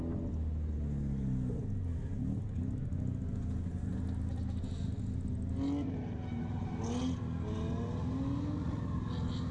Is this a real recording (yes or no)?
yes